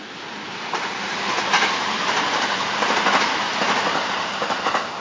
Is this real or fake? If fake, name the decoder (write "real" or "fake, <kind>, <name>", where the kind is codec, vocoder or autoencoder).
real